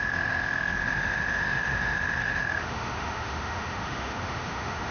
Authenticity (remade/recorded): remade